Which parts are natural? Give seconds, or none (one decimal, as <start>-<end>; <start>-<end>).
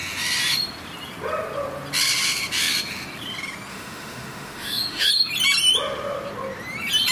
0.0-3.7; 5.1-7.1